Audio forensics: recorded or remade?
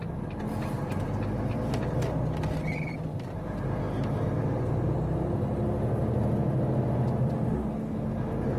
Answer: recorded